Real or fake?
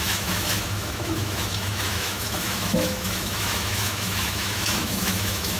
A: fake